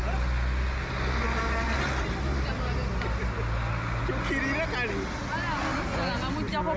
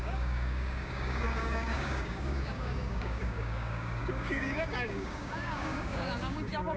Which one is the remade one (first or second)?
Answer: second